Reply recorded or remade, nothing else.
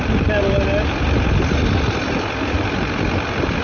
recorded